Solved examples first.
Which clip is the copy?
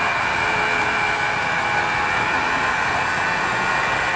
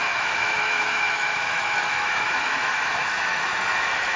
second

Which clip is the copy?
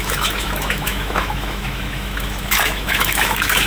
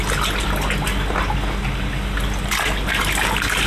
first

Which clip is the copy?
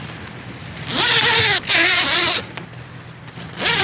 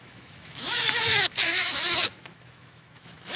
second